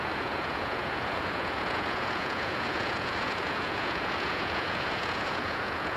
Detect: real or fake fake